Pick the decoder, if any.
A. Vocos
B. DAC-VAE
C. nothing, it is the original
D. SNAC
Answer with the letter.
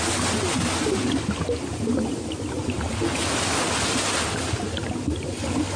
C